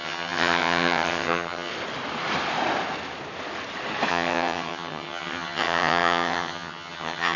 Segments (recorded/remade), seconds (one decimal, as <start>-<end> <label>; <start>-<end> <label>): 0.0-1.7 remade; 1.7-4.1 recorded; 4.1-7.4 remade